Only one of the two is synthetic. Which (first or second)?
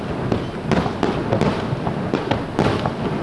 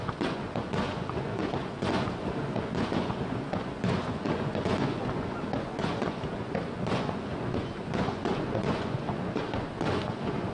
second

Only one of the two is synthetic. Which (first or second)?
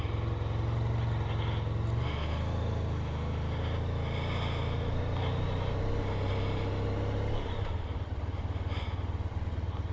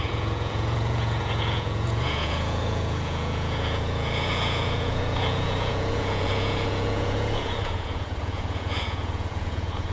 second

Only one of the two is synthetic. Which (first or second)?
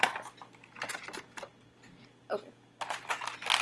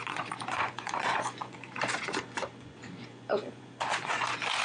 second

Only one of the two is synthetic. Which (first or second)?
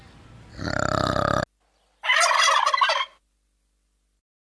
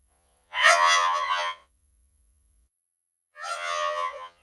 second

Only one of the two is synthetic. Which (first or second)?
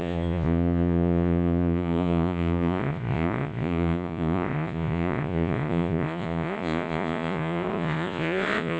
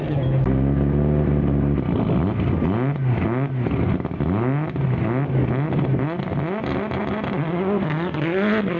first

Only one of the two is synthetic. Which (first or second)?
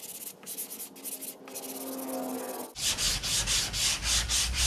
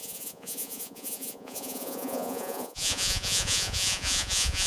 second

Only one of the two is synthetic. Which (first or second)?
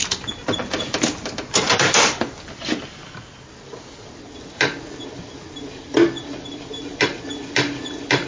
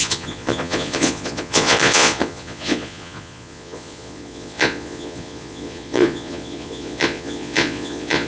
second